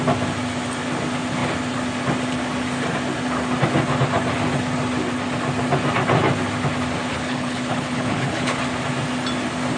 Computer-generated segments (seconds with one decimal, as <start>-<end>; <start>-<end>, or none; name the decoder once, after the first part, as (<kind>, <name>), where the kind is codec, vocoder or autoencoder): 7.1-8.6 (codec, HILCodec)